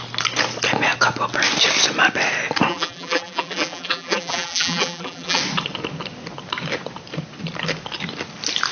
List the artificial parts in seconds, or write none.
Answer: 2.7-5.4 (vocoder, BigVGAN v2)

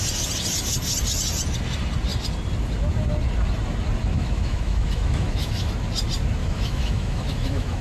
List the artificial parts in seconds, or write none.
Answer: 4.1-5.7 (autoencoder, DAC-VAE); 6.4-7.8

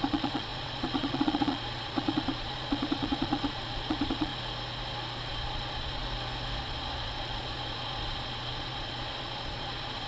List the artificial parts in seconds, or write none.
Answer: 0.0-4.3 (vocoder, Vocos); 5.3-6.0; 6.6-10.1

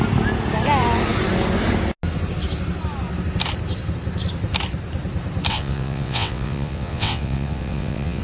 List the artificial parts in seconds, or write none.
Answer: 5.5-8.2 (vocoder, WaveNeXt)

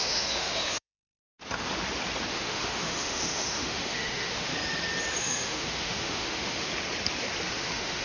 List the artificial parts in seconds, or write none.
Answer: 0.0-1.2 (autoencoder, DAC-VAE); 2.3-4.5; 5.2-6.7; 7.5-8.0

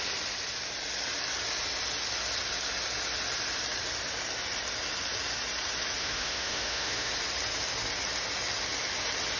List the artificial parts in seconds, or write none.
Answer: 6.0-7.1 (autoencoder, DAC-VAE)

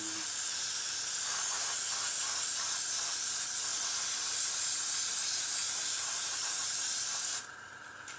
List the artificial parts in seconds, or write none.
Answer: none